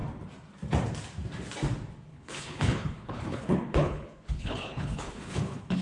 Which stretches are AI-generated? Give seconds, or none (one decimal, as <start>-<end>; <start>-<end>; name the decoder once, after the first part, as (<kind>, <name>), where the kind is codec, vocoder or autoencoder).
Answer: 2.1-5.8 (codec, HILCodec)